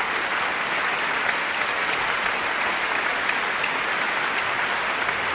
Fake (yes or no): no